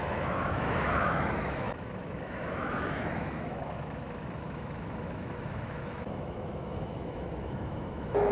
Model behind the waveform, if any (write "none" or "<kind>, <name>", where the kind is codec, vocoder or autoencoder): autoencoder, DAC-VAE